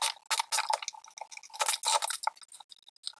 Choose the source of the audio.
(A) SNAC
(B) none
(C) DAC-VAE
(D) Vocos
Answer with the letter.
B